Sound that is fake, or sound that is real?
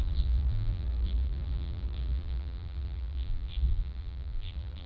fake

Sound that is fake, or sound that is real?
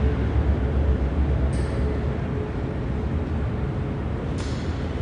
real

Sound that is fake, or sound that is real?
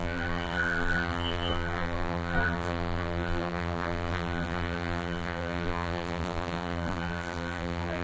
fake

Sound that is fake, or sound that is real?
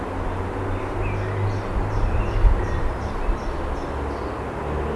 real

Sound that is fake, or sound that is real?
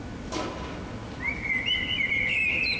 real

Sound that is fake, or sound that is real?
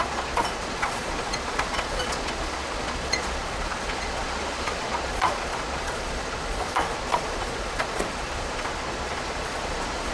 fake